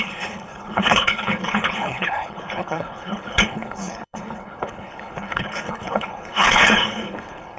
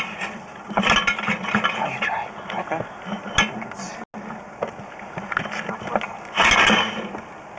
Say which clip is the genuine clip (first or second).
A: second